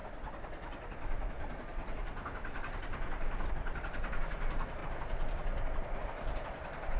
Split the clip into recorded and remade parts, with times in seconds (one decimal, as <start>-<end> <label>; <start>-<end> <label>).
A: 0.0-3.5 recorded; 3.5-4.8 remade; 4.8-6.0 recorded; 6.0-7.0 remade